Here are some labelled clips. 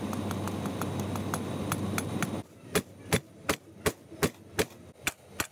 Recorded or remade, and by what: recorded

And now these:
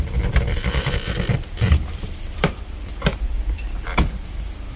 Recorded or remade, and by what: remade, vocoder, BigVGAN v2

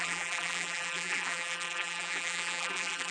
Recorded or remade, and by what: remade, vocoder, BigVGAN v2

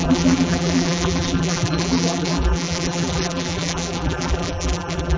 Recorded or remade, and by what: remade, vocoder, BigVGAN v2